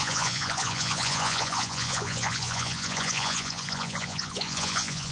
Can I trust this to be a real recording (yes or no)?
no